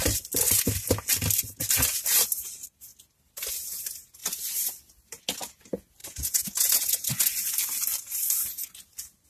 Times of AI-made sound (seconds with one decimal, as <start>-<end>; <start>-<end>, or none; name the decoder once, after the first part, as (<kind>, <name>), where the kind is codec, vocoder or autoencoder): 6.0-7.1 (vocoder, Vocos)